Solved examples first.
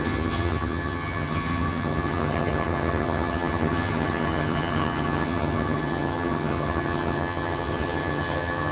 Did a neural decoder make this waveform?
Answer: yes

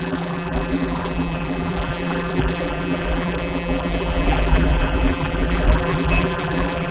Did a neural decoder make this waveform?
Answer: yes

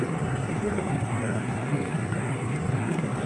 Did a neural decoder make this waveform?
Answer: yes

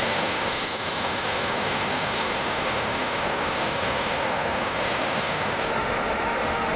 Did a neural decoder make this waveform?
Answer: yes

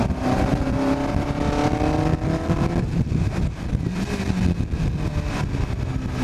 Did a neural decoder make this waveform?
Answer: no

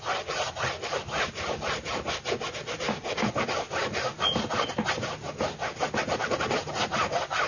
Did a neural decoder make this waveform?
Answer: no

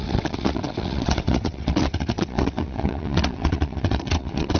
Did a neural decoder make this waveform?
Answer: yes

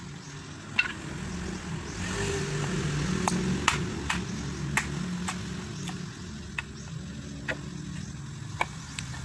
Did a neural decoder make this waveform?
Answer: no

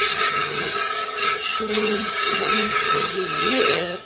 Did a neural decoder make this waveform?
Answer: yes